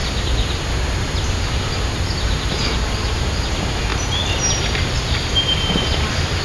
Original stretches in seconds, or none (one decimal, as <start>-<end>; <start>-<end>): 0.0-6.4